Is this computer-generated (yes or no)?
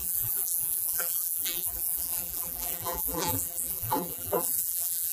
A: yes